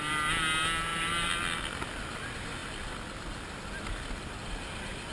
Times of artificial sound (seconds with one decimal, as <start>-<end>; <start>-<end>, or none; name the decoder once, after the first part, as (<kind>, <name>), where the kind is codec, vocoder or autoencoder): none